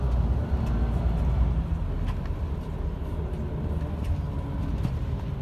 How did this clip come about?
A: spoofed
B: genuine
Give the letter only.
B